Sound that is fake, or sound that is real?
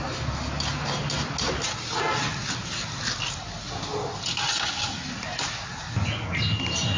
real